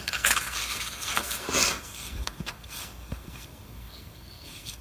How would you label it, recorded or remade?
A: remade